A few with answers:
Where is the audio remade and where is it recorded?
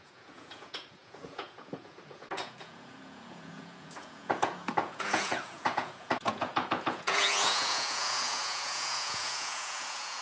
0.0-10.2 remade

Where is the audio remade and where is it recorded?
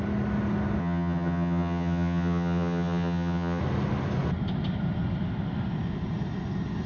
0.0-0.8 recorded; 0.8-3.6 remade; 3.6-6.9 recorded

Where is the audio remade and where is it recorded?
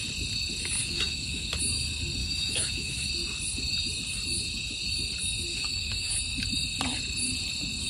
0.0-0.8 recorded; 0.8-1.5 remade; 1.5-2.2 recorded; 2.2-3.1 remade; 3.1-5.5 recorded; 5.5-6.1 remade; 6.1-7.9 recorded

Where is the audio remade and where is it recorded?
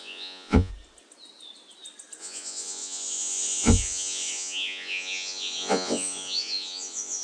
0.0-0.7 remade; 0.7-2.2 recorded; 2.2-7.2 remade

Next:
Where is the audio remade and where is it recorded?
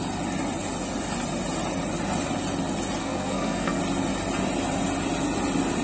0.0-3.0 recorded; 3.0-3.8 remade; 3.8-5.8 recorded